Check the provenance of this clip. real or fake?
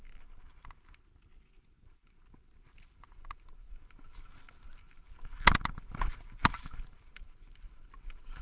real